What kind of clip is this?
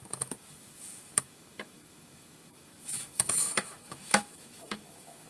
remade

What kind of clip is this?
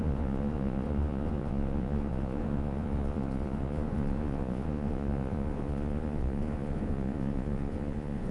remade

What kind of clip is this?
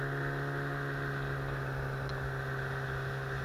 recorded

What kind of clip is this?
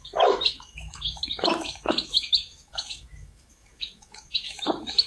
remade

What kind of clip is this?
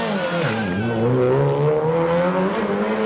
recorded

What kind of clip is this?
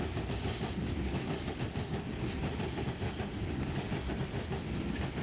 recorded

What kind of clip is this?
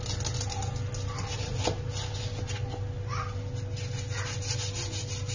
recorded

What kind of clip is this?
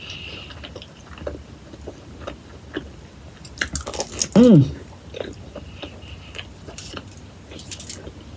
recorded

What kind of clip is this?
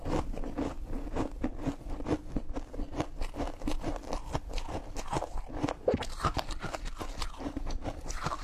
recorded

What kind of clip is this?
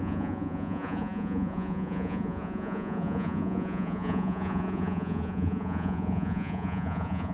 remade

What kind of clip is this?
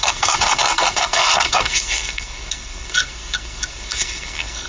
remade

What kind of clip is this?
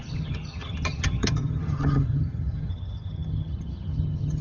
remade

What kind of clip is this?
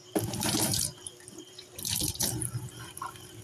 remade